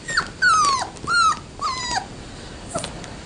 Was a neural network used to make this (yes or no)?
no